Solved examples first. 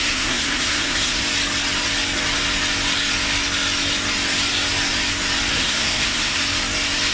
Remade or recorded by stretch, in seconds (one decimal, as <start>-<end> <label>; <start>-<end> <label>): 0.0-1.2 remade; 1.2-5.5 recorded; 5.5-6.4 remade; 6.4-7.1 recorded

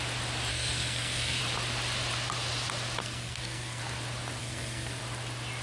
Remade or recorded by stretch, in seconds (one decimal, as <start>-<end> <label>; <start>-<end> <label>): 0.0-0.5 recorded; 0.5-1.4 remade; 1.4-3.0 recorded; 3.0-3.8 remade; 3.8-4.4 recorded; 4.4-5.0 remade; 5.0-5.6 recorded

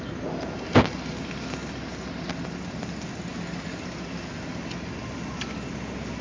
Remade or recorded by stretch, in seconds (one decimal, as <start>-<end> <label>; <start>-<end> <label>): 0.0-6.2 recorded

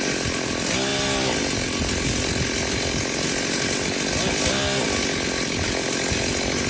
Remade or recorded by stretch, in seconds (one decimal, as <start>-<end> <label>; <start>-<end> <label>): 0.0-6.7 recorded

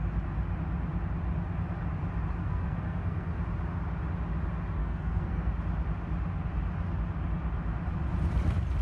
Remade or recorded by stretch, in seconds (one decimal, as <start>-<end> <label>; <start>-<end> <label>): 0.0-2.4 recorded; 2.4-3.4 remade; 3.4-4.8 recorded; 4.8-5.5 remade; 5.5-8.8 recorded

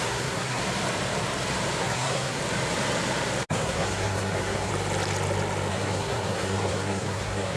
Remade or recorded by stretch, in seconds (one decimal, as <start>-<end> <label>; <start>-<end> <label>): 0.0-0.6 remade; 0.6-1.8 recorded; 1.8-2.4 remade; 2.4-3.5 recorded; 3.5-4.7 remade; 4.7-5.7 recorded; 5.7-7.6 remade